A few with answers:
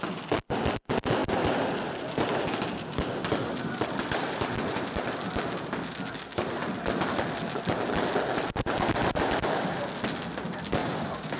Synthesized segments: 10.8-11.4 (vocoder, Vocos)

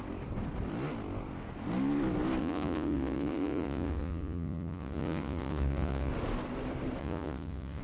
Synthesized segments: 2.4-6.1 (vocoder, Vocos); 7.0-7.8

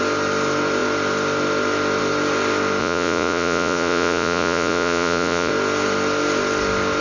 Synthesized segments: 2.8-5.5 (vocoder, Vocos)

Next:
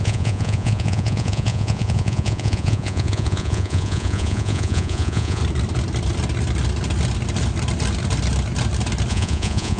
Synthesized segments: 0.0-5.4 (vocoder, Vocos); 9.1-9.8